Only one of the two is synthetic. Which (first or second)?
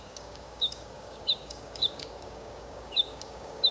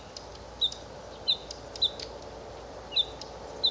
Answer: first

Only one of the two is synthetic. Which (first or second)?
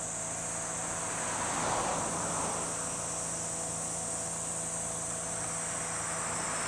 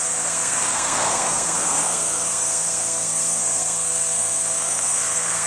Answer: second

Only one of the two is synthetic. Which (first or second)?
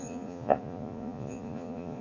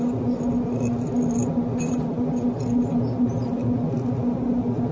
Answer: first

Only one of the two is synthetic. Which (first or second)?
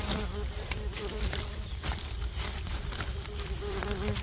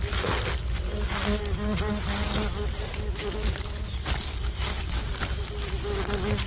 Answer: first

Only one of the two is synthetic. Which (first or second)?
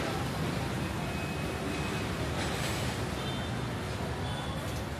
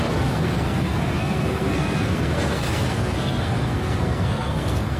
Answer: second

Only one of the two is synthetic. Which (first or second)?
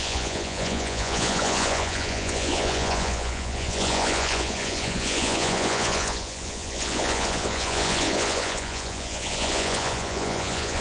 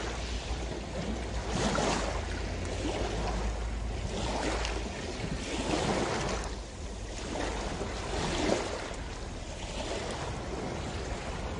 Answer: first